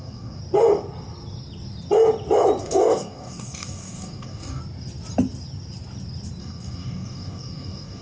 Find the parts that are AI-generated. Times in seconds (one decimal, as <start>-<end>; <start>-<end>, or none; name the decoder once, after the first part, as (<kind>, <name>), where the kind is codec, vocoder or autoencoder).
0.0-0.4 (codec, DAC); 2.6-4.6; 6.4-8.0